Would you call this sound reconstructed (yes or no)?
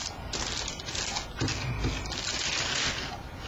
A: no